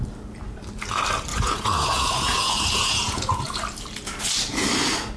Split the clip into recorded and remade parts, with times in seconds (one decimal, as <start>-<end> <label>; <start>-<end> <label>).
0.0-1.3 recorded; 1.3-3.6 remade; 3.6-5.2 recorded